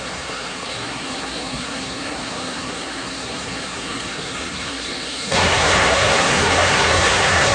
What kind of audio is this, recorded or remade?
remade